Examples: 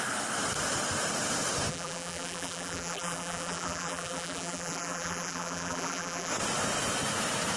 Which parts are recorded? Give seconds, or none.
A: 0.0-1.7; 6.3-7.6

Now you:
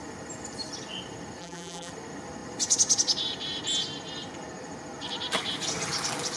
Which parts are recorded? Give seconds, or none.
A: 0.0-1.4; 1.9-6.4

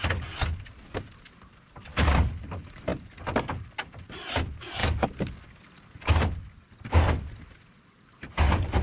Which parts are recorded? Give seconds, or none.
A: 0.0-8.8

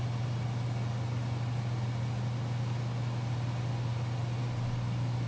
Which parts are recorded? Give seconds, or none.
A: 0.0-5.3

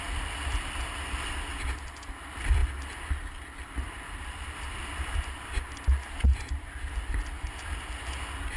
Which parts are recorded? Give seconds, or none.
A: 0.0-8.6

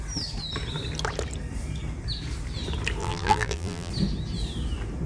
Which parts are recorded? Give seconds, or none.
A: 0.0-3.0; 3.9-5.1

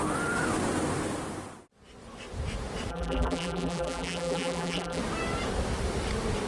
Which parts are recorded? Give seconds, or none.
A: 0.0-2.9; 5.0-6.5

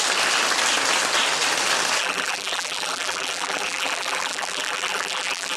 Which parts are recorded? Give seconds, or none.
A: 0.0-2.0